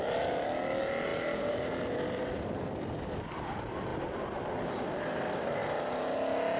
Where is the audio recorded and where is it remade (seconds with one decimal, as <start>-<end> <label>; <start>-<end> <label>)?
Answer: 0.0-1.1 recorded; 1.1-3.0 remade; 3.0-6.6 recorded